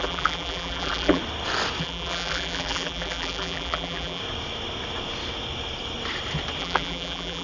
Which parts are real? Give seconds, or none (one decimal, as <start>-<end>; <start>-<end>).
1.2-1.8; 4.2-6.6